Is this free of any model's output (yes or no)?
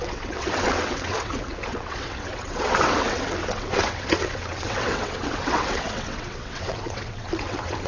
no